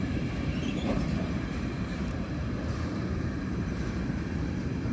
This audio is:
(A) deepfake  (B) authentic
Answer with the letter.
A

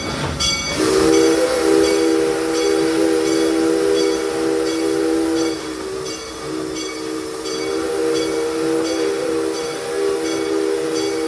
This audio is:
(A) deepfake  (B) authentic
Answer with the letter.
B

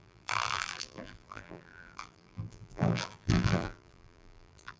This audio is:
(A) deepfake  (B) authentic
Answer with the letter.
A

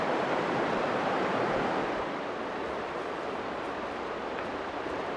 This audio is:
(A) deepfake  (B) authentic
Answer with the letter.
A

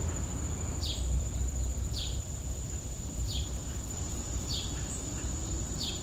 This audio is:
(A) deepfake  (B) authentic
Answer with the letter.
A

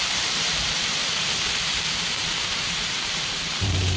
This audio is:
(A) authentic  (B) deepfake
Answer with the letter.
B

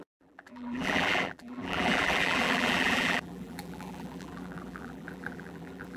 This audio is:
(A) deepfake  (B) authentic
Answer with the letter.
A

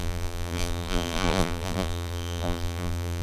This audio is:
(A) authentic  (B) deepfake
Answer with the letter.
B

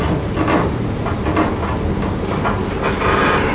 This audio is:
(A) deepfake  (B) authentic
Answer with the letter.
B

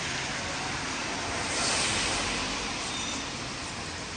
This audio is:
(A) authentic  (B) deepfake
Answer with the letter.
A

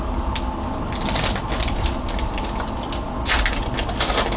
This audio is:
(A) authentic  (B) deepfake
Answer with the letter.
A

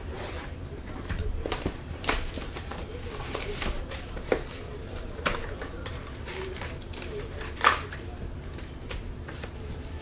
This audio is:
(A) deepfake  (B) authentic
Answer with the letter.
A